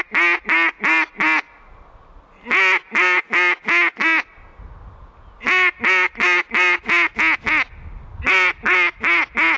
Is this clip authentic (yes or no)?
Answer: yes